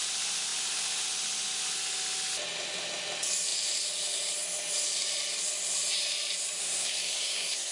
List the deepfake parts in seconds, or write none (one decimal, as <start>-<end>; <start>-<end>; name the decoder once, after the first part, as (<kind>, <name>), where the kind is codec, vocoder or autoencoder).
6.6-7.7 (codec, SNAC)